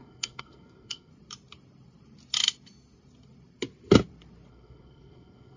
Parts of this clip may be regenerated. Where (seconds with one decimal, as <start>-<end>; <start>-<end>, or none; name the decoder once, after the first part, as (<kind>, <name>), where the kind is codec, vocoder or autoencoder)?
0.0-1.1 (codec, SNAC); 4.5-5.6